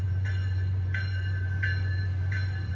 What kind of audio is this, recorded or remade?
remade